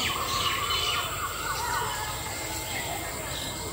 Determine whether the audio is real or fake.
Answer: real